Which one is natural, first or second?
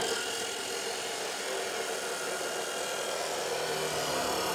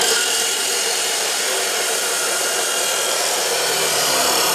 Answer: first